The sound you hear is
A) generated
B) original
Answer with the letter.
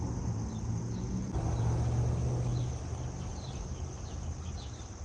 B